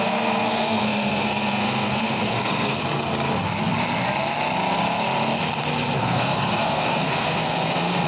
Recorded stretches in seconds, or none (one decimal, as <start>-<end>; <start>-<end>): 2.8-6.0